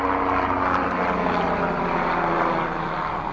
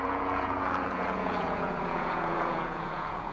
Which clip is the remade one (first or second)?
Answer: second